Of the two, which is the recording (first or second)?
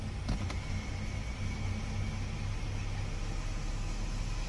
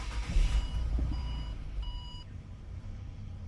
first